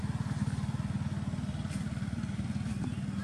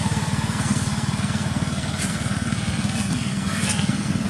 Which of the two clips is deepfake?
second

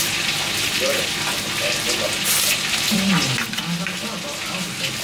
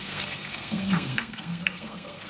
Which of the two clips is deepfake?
second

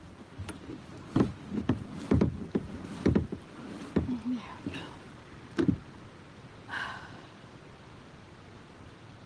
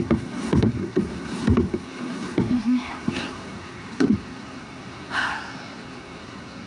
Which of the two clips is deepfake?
second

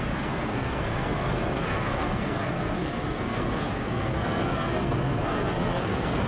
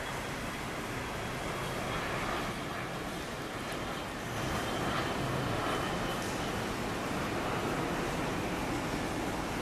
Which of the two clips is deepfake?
first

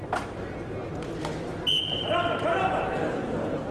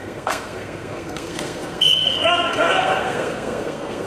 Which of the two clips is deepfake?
second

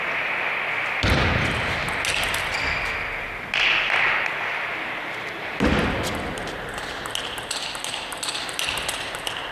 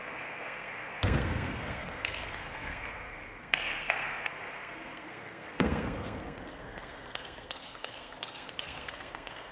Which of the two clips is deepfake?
second